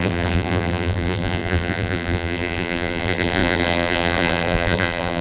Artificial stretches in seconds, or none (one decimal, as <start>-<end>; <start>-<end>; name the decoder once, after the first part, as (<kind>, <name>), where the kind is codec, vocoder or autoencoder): 0.0-5.2 (vocoder, BigVGAN v2)